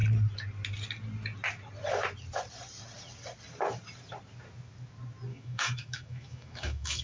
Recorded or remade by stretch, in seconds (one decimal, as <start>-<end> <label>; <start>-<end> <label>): 0.0-5.3 recorded; 5.3-7.0 remade